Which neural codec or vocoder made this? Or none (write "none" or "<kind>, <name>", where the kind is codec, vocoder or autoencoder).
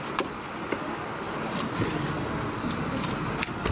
none